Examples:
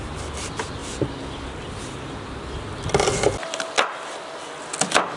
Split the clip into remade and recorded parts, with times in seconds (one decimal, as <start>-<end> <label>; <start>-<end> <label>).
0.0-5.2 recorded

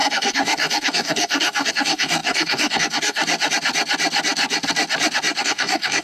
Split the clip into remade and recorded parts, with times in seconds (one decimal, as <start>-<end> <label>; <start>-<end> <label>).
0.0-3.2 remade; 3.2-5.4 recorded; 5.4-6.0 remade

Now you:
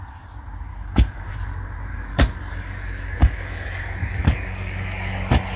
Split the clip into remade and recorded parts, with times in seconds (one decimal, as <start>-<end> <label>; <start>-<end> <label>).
0.0-0.7 recorded; 0.7-1.3 remade; 1.3-1.9 recorded; 1.9-5.6 remade

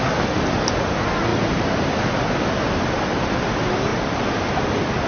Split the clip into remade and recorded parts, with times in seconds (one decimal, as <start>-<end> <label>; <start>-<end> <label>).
0.0-5.1 recorded

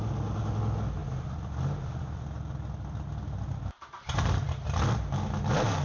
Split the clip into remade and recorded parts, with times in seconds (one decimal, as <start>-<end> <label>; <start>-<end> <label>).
0.0-5.8 recorded